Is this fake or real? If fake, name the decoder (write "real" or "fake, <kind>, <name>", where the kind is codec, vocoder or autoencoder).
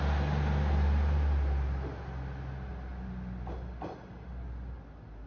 real